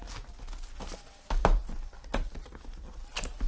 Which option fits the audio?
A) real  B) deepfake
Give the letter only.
A